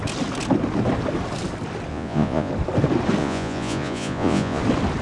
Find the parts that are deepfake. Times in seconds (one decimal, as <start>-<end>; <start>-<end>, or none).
1.9-2.5; 3.2-4.6